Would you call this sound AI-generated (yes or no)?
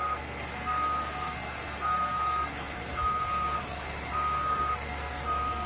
yes